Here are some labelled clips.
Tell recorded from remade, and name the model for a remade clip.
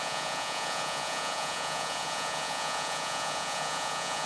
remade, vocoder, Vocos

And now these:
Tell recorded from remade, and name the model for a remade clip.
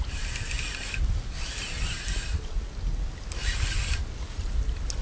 recorded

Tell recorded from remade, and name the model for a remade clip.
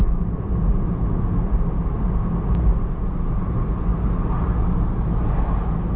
recorded